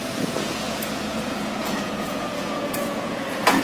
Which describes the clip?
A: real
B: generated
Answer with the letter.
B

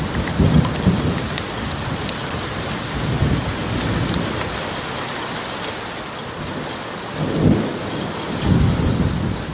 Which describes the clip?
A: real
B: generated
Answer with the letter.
A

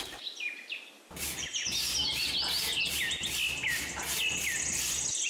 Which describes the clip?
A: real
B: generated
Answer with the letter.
A